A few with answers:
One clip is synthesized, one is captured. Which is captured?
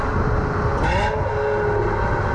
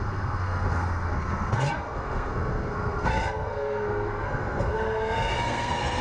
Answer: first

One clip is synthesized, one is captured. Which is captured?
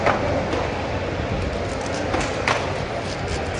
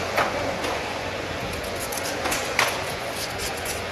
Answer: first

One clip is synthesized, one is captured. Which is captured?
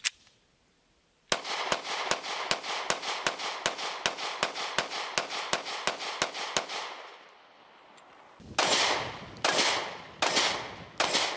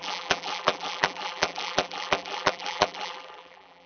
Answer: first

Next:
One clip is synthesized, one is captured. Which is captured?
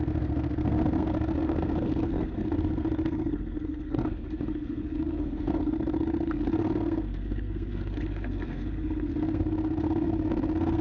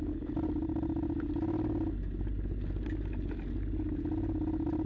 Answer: second